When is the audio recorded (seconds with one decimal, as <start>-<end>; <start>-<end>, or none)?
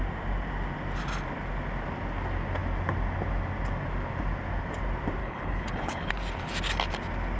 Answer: 0.0-5.2; 6.1-7.4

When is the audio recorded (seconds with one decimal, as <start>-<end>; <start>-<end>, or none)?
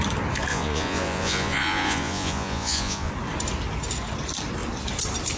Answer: 0.0-0.5; 3.1-5.4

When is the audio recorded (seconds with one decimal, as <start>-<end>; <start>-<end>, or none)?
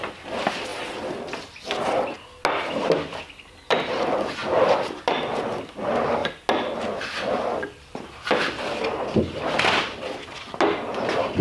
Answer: 0.0-11.4